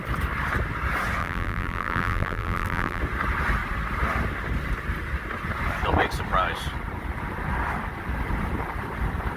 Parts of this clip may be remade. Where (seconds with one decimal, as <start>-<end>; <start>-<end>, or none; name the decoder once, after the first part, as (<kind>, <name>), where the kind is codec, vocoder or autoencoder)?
1.2-3.0 (vocoder, BigVGAN v2)